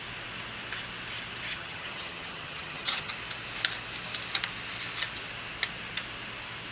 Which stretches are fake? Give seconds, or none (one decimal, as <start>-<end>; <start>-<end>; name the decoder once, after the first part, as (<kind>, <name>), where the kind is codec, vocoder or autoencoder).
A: 1.5-3.1 (vocoder, HiFi-GAN)